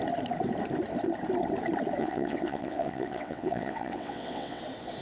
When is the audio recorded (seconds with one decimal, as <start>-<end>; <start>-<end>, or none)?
0.0-2.0; 4.6-5.0